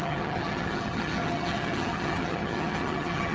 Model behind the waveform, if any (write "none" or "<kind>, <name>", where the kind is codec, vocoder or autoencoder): vocoder, HiFi-GAN